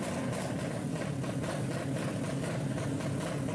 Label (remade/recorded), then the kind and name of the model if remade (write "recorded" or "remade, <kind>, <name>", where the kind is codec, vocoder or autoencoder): recorded